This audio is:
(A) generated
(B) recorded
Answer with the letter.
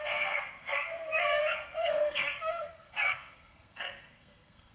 A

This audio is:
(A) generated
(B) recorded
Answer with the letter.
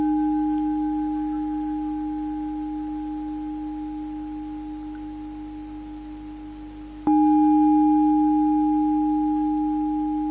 B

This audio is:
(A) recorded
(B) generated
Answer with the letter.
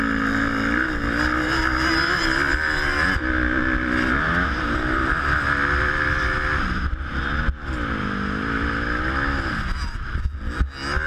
A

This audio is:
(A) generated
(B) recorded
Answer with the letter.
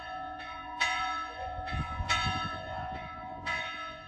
A